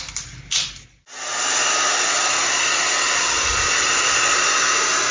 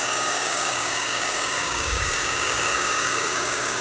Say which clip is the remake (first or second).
second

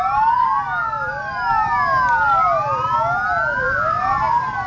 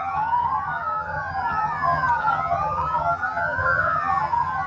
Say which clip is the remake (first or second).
second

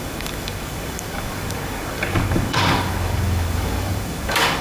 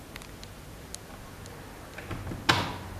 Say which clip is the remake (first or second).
first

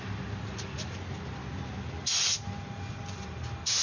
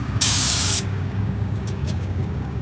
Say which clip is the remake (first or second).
second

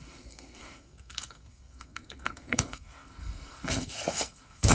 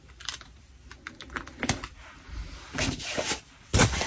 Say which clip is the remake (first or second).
first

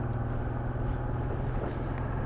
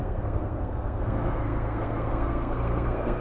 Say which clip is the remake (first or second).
second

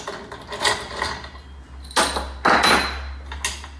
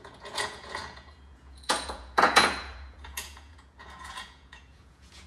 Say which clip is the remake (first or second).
second